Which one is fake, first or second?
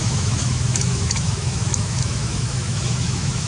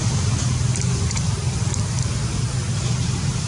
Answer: first